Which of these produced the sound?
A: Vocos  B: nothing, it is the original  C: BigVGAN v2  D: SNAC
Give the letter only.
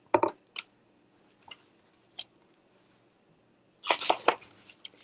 B